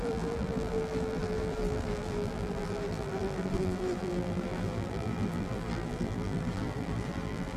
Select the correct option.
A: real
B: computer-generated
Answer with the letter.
B